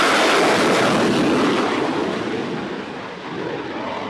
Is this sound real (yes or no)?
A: yes